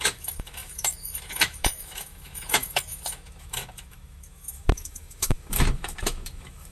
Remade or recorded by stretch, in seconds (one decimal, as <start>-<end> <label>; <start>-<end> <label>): 0.0-6.7 remade